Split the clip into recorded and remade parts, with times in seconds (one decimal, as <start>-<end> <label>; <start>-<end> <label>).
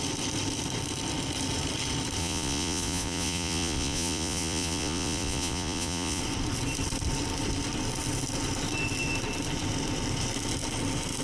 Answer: 0.0-2.2 recorded; 2.2-6.2 remade; 6.2-11.2 recorded